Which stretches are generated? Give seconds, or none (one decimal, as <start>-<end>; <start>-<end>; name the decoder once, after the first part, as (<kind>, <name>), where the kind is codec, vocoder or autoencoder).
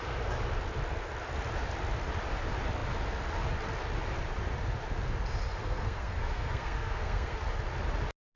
5.6-7.4 (codec, SNAC)